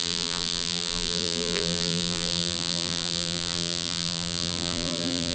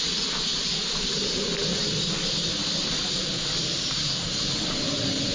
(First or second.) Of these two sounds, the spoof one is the first